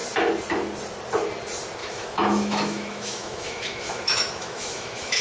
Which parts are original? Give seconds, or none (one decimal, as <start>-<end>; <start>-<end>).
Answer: 0.0-1.8